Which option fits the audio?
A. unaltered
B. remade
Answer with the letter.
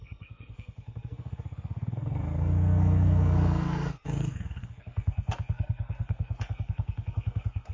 B